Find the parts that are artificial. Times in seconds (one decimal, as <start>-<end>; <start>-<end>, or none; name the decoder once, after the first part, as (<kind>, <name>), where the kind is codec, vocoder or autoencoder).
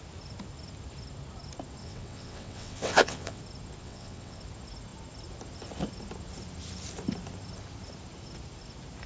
1.8-3.4 (vocoder, WaveNeXt); 3.8-4.4